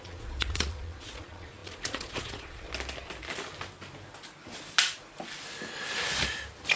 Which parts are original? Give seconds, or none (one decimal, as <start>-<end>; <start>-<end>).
2.7-6.8